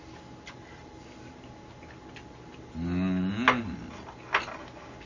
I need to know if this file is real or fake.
real